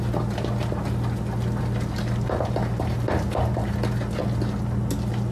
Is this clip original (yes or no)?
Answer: yes